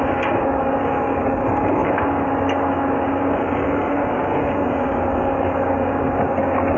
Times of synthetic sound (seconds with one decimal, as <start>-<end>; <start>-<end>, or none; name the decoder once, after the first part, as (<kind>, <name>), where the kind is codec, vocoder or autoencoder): 0.0-6.8 (codec, DAC)